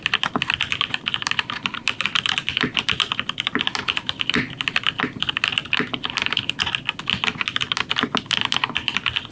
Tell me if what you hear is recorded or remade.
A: recorded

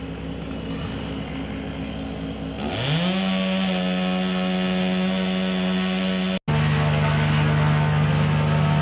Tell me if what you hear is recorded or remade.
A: recorded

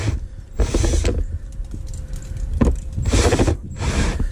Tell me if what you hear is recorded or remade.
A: recorded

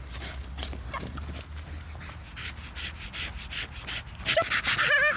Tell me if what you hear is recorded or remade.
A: recorded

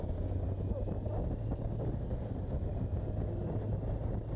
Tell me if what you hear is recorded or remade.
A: recorded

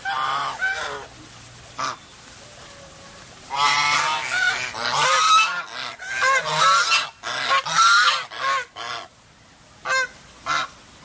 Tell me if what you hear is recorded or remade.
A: recorded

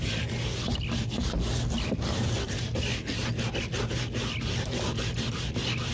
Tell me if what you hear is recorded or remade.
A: recorded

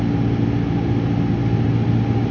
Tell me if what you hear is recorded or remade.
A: recorded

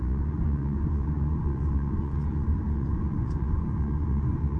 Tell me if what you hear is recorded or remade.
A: remade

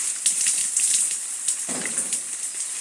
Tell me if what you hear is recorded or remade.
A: recorded